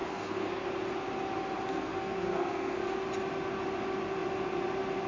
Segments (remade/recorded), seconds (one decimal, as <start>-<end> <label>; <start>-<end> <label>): 0.0-0.6 remade; 0.6-1.7 recorded; 1.7-3.0 remade; 3.0-5.1 recorded